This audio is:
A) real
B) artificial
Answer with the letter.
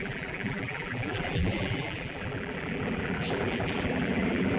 B